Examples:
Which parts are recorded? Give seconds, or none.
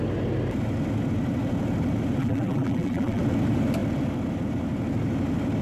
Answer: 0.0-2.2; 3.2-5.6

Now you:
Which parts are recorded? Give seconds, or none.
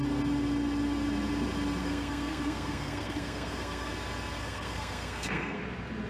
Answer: 0.0-1.8; 3.9-4.4; 5.6-6.1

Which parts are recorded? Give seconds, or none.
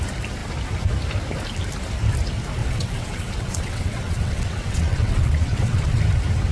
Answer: 0.0-2.6; 6.0-6.5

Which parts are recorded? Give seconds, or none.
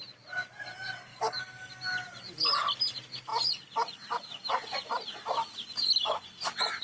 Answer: 0.0-1.1; 1.7-6.8